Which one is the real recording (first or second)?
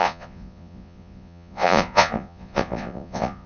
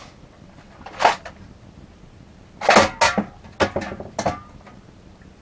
second